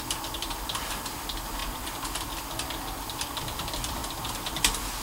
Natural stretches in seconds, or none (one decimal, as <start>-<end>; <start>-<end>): 1.6-3.4